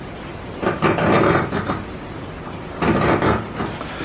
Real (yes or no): yes